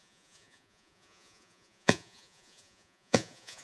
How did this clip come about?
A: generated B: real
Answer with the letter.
A